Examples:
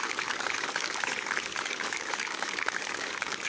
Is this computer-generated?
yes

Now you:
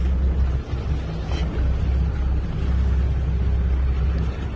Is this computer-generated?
no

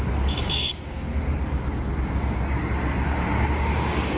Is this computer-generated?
yes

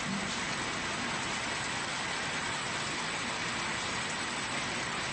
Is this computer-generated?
no